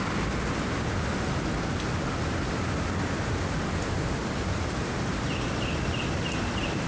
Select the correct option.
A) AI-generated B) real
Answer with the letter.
B